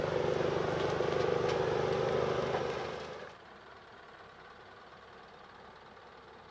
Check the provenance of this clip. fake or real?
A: real